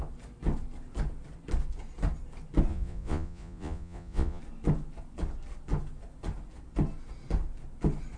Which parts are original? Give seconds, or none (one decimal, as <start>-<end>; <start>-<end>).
0.0-2.7; 4.4-8.2